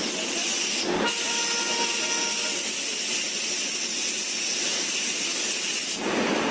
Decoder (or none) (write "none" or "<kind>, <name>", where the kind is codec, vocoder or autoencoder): none